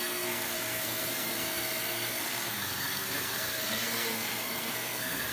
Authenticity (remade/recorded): remade